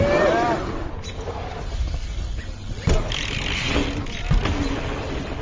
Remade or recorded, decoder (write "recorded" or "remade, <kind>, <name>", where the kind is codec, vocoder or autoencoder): recorded